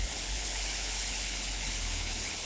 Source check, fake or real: fake